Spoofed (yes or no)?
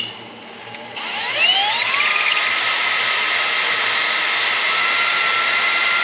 no